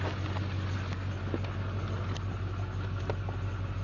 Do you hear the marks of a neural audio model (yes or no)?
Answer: no